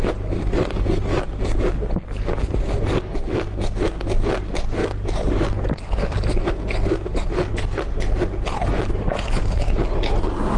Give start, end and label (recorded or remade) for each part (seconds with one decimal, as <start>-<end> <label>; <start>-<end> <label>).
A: 0.0-10.6 recorded